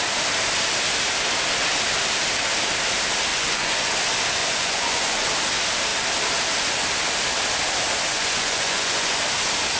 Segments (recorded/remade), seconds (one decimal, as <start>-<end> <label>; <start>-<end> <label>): 0.0-3.3 recorded; 3.3-3.9 remade; 3.9-4.4 recorded; 4.4-5.3 remade; 5.3-8.1 recorded; 8.1-9.2 remade; 9.2-9.8 recorded